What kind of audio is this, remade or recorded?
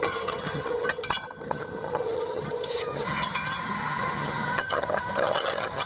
remade